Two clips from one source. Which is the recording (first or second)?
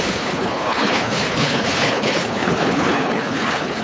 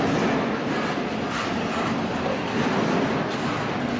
second